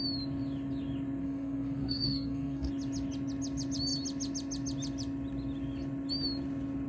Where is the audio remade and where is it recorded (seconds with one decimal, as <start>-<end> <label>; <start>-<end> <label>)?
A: 0.0-1.2 recorded; 1.2-2.7 remade; 2.7-6.9 recorded